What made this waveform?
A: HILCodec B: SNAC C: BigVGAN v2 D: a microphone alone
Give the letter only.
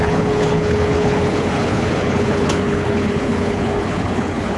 A